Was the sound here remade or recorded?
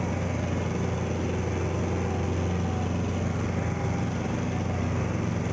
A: recorded